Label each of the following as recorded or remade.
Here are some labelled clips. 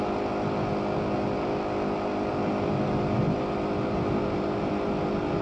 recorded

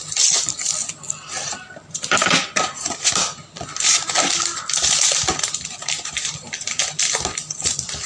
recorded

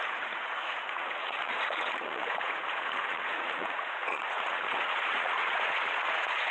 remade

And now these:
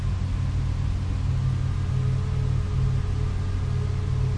recorded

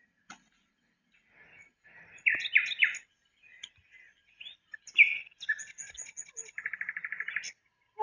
recorded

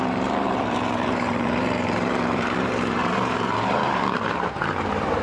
remade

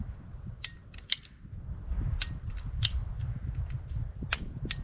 recorded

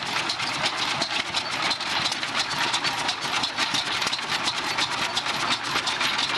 recorded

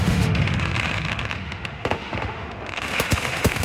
remade